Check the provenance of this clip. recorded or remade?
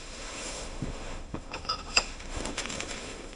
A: remade